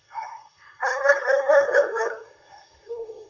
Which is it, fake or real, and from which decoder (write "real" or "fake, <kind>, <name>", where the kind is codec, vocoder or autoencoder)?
fake, codec, SNAC